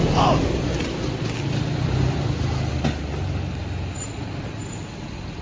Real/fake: real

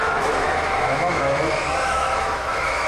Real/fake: fake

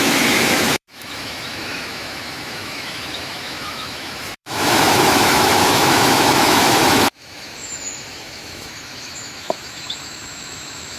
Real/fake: fake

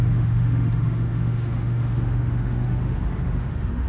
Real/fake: fake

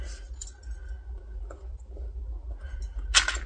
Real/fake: real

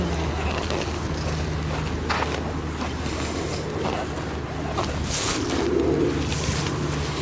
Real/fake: real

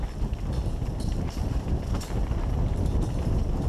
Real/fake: real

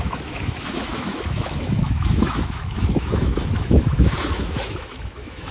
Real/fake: fake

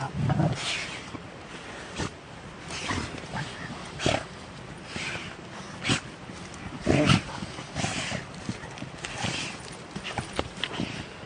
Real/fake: real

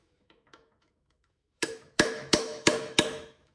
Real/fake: fake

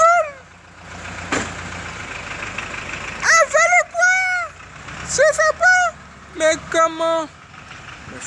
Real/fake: real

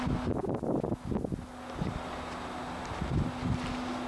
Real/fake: real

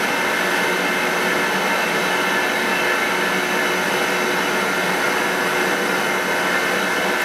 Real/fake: real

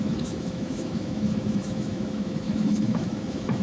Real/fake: fake